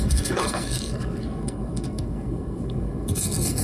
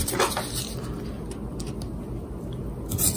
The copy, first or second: first